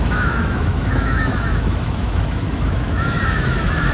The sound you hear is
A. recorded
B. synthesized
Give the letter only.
B